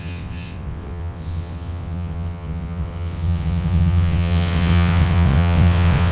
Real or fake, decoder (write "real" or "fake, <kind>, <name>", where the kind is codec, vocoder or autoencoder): fake, vocoder, WaveNeXt